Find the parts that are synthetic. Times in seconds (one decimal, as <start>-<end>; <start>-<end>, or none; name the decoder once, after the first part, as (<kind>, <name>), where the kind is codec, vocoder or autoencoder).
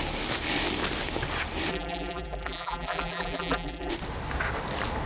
1.7-3.9 (vocoder, BigVGAN v2)